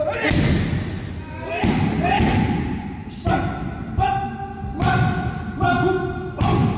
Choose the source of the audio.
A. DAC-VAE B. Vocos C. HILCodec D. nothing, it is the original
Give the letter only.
D